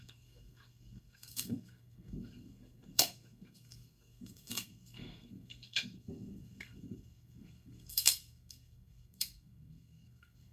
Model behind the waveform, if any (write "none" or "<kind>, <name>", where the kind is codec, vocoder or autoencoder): codec, SNAC